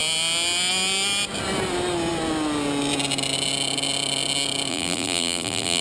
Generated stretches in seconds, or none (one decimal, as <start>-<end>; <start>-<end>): 4.7-5.8